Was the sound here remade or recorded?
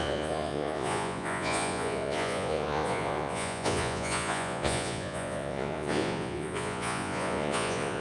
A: remade